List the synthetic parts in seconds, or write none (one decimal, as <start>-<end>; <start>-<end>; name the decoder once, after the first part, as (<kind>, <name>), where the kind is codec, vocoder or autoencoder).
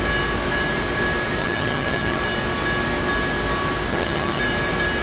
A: 1.4-2.2 (vocoder, HiFi-GAN); 3.9-4.4